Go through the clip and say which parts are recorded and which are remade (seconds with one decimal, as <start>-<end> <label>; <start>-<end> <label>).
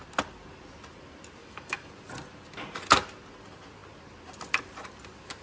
0.0-1.4 recorded; 1.4-1.9 remade; 1.9-5.4 recorded